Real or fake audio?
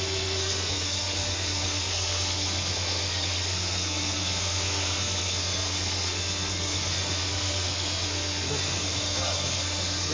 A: fake